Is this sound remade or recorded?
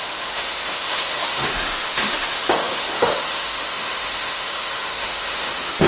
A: remade